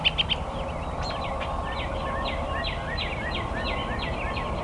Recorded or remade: recorded